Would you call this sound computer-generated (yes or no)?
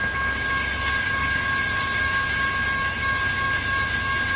yes